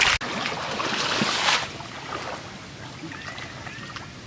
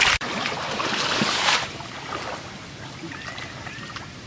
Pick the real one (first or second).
first